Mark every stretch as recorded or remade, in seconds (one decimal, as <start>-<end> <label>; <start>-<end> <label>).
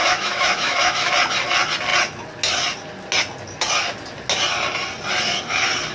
0.0-1.1 remade; 1.1-5.9 recorded